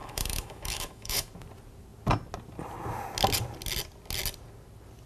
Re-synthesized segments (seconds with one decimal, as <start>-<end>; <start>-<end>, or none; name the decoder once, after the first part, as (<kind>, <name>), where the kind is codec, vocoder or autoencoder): 0.0-1.3 (autoencoder, DAC-VAE)